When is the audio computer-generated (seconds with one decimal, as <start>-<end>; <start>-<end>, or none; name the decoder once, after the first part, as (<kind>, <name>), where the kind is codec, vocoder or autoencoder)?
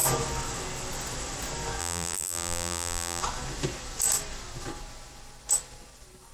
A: 1.8-3.2 (vocoder, BigVGAN v2)